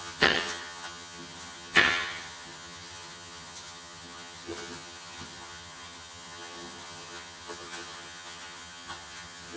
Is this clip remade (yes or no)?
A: yes